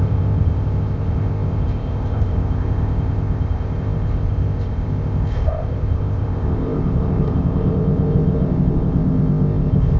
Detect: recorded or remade remade